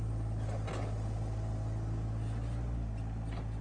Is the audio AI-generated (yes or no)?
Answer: no